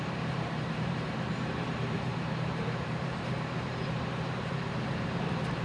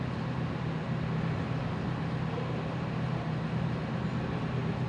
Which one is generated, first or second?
first